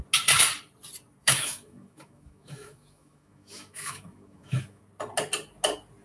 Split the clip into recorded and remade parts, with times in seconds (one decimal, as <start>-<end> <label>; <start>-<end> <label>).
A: 0.0-1.2 recorded; 1.2-4.8 remade; 4.8-6.0 recorded